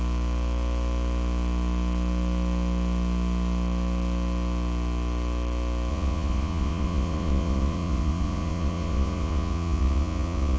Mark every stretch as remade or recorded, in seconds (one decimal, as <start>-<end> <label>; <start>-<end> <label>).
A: 0.0-5.9 recorded; 5.9-10.6 remade